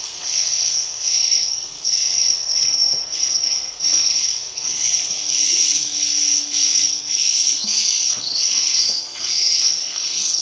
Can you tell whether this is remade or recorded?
remade